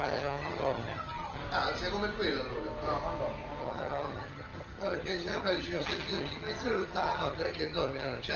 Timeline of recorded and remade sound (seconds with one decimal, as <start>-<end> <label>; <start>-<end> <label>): 0.0-1.4 remade; 1.4-3.6 recorded; 3.6-8.4 remade